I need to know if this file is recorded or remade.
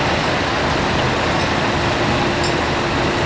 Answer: recorded